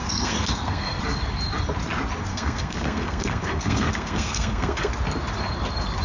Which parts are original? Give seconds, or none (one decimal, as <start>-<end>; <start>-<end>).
1.0-2.3; 4.9-6.0